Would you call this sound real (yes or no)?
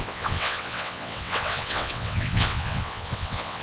no